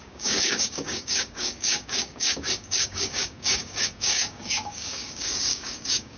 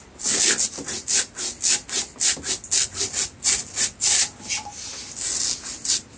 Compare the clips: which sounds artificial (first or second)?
first